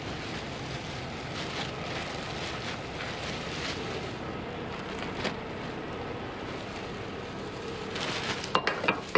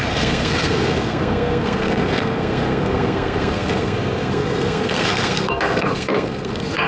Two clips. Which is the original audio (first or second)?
first